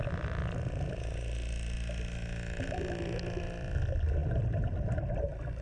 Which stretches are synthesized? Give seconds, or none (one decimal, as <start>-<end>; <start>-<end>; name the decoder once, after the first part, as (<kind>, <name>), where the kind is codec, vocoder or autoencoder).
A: none